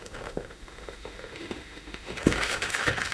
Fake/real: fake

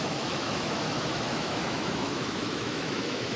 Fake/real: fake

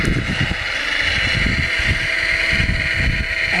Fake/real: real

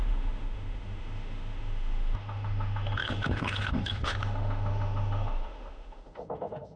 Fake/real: fake